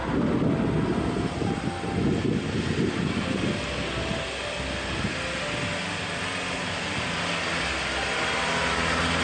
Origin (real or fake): real